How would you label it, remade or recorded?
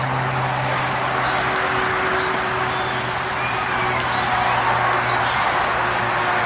recorded